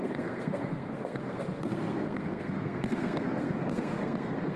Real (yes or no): no